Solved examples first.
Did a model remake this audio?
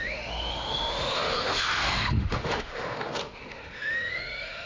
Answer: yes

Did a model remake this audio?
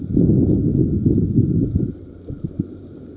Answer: no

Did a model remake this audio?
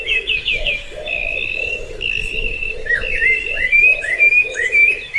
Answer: yes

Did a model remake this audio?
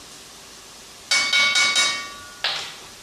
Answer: no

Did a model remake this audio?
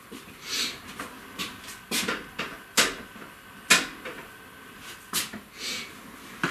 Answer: no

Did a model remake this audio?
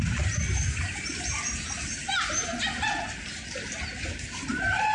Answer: no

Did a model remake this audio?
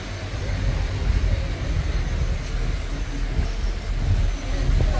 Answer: no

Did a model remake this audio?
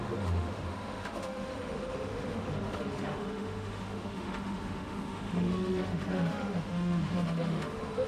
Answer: yes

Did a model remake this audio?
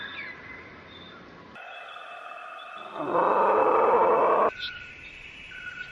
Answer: no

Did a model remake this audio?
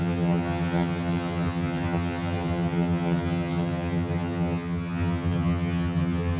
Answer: yes